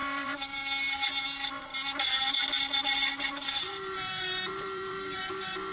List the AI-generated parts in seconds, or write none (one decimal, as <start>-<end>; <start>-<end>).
0.0-0.6; 3.3-5.2